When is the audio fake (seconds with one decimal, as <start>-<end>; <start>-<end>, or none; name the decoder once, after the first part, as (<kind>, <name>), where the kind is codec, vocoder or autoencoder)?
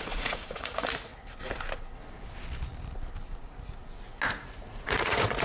0.0-1.1 (vocoder, Vocos); 4.3-5.4